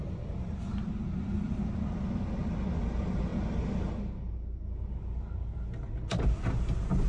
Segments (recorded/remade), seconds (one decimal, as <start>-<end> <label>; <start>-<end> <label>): 0.0-7.1 recorded